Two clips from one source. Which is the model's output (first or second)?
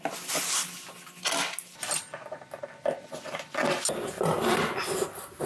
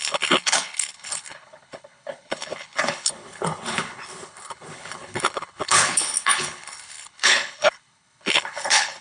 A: second